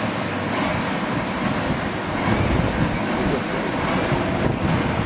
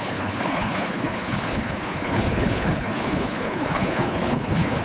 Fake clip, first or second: second